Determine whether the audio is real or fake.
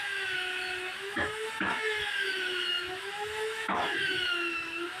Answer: fake